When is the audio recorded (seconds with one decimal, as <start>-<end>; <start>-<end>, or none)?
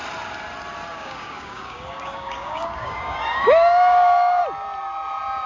0.0-0.9; 4.4-5.5